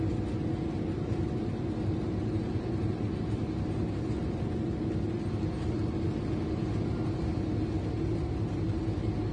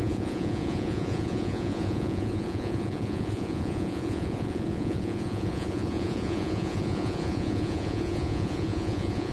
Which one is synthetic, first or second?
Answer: second